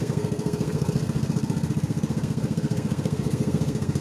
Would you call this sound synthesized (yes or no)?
yes